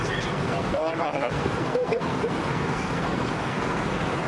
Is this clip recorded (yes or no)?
no